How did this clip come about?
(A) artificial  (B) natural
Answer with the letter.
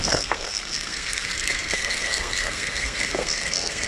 A